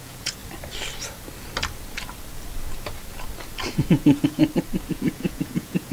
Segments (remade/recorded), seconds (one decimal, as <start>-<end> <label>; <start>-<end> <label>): 0.0-0.4 remade; 0.4-3.9 recorded; 3.9-4.4 remade; 4.4-4.9 recorded; 4.9-5.9 remade